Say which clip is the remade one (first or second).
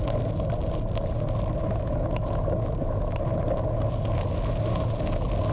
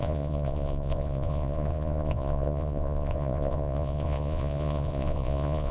second